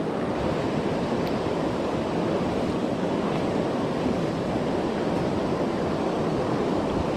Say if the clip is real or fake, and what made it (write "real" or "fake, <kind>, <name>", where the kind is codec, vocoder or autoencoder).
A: real